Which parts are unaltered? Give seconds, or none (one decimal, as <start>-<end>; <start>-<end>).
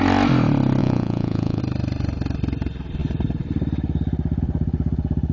0.0-0.8; 1.6-5.3